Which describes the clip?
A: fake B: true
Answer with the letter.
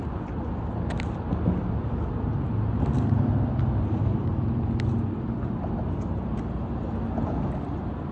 B